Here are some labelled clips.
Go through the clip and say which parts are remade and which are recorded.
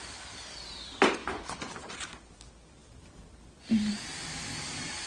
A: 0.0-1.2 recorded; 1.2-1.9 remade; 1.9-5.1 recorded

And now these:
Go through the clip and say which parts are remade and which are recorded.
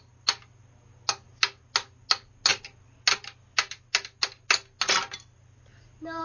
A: 0.0-6.2 recorded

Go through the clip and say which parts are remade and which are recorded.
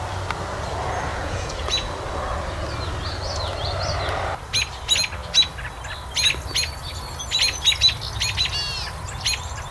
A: 0.0-1.1 recorded; 1.1-1.9 remade; 1.9-9.7 recorded